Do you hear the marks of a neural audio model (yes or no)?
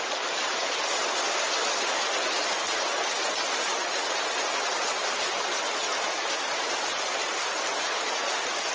no